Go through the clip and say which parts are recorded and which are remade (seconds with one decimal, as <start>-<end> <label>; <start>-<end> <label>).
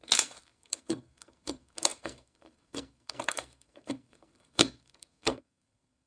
0.0-6.1 remade